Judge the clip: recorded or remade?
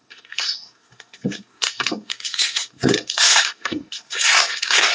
remade